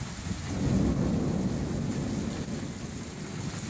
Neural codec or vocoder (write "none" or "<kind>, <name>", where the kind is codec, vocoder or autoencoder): none